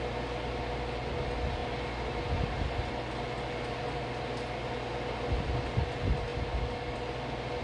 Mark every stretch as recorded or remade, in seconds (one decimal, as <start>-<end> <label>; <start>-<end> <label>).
0.0-7.6 recorded